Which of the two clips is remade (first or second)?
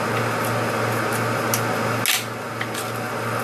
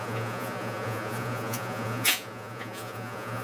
second